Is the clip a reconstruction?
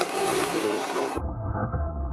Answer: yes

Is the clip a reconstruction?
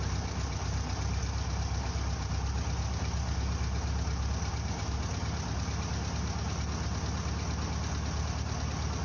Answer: no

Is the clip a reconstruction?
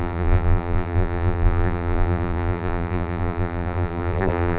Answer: yes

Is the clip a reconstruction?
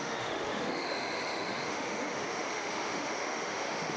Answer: yes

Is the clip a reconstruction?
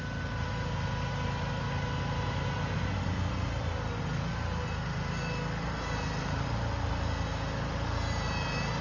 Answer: no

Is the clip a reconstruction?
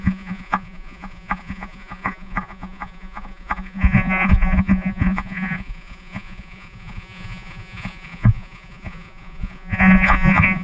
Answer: yes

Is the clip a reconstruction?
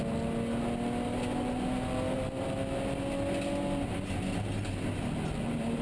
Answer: no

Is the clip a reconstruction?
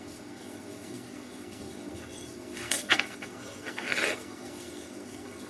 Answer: yes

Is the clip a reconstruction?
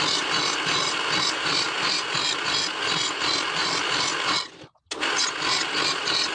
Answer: no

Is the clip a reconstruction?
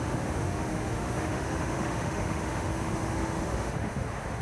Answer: yes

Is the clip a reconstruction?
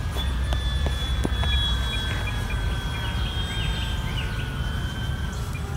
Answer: no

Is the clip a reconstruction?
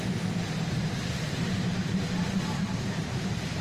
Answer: yes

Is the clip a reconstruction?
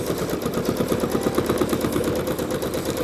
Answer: no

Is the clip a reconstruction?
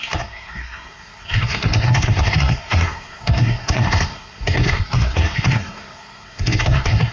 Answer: yes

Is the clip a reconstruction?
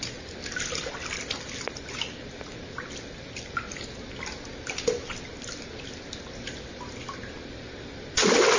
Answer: no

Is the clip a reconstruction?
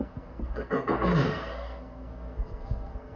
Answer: yes